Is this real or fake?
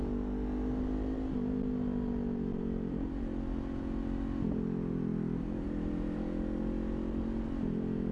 real